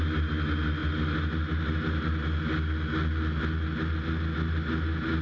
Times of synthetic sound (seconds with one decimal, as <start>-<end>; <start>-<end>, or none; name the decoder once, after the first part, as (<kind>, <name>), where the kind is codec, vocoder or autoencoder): none